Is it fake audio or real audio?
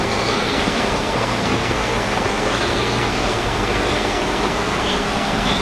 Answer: fake